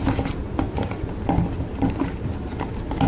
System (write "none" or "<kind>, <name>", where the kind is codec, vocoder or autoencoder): none